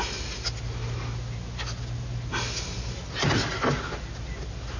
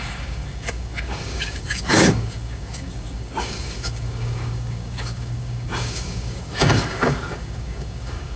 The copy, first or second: second